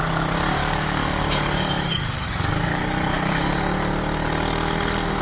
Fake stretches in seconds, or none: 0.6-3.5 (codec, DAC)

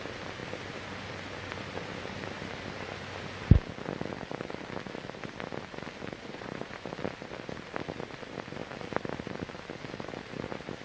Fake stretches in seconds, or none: 6.3-6.9 (vocoder, Vocos)